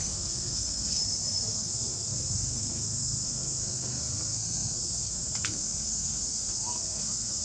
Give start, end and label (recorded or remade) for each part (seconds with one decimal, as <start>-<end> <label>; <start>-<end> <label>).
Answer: 0.0-1.0 remade; 1.0-1.5 recorded; 1.5-7.4 remade